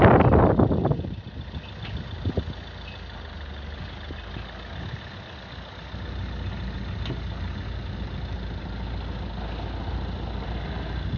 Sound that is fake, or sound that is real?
real